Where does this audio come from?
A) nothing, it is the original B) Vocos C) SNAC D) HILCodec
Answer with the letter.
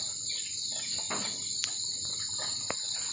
A